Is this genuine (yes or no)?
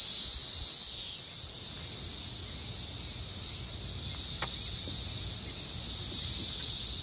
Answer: yes